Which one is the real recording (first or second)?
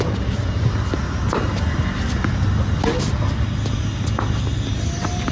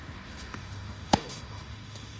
first